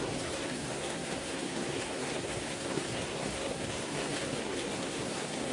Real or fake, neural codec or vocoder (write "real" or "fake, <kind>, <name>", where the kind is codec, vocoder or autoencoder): fake, codec, SNAC